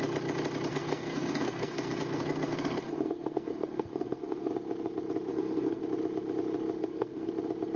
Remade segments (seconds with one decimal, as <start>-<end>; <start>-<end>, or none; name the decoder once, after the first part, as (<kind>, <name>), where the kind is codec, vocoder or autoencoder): 0.7-4.5 (codec, SNAC); 5.3-5.8; 6.8-7.3